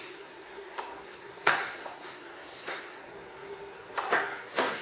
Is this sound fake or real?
fake